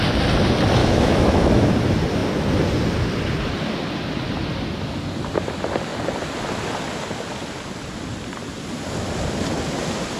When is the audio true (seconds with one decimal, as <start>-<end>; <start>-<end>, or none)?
0.0-0.8; 1.7-10.2